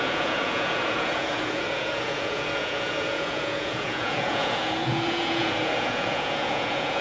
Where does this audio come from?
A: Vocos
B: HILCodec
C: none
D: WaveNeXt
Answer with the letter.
A